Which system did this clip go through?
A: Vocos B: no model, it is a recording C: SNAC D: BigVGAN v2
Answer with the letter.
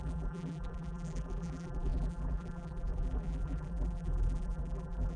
D